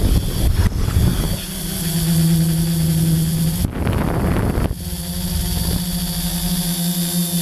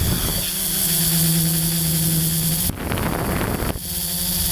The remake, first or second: first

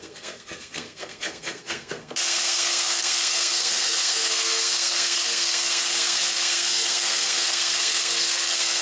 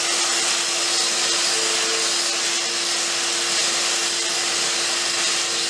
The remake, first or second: first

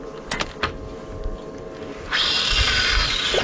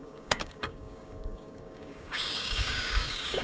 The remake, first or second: second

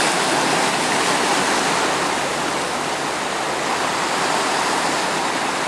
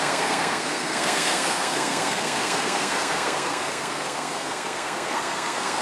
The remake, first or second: second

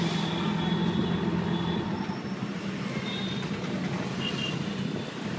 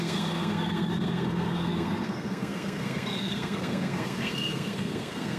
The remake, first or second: second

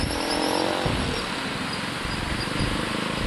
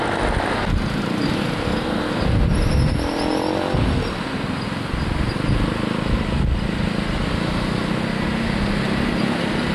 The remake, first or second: first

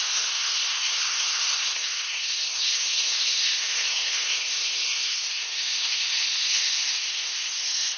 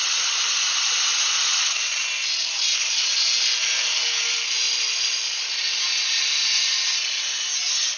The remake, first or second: first